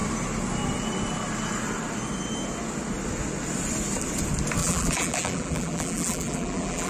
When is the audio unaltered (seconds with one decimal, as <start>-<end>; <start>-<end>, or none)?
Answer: 0.0-4.6